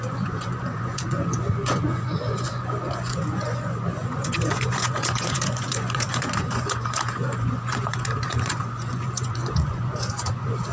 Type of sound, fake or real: fake